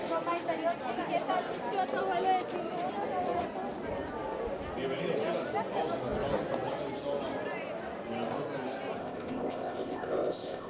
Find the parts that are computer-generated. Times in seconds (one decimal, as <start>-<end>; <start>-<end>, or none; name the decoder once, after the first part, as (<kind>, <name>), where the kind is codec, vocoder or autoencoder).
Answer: 9.0-10.7 (codec, ZipCodec)